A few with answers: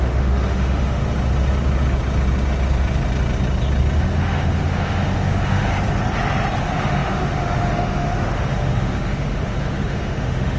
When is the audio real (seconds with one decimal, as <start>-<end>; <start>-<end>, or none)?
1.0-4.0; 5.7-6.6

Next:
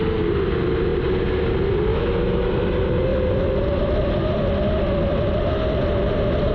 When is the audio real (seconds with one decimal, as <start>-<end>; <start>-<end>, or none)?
0.0-1.9; 2.5-6.5

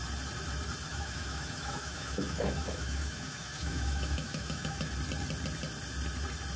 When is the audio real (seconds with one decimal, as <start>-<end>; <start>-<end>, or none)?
0.0-0.9; 4.9-6.6

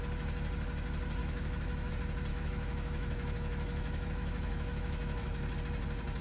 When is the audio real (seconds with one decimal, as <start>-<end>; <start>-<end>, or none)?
0.0-1.2; 1.9-2.3; 5.6-6.2